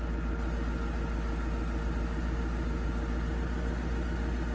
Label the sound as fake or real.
real